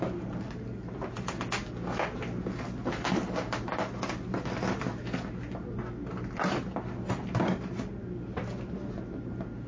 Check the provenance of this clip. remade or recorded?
recorded